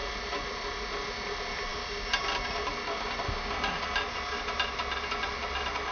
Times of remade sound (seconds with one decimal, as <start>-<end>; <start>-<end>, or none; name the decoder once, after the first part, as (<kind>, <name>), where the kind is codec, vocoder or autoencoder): none